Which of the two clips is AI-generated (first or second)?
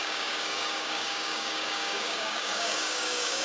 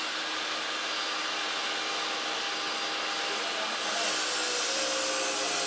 first